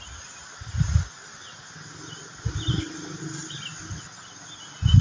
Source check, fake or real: real